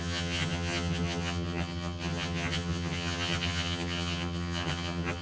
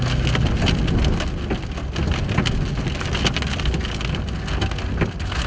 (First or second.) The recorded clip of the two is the second